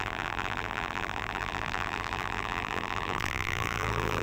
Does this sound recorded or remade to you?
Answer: remade